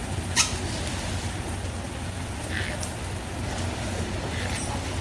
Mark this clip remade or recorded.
recorded